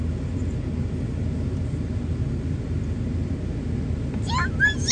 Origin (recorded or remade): recorded